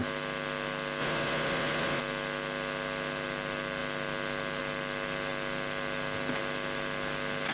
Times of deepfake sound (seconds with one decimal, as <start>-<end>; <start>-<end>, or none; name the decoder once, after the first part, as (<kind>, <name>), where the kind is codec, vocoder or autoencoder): 1.0-2.0 (vocoder, Vocos)